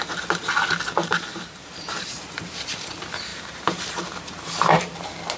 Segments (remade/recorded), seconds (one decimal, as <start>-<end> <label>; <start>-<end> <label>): 0.0-1.0 recorded; 1.0-2.1 remade; 2.1-3.3 recorded; 3.3-4.8 remade; 4.8-5.4 recorded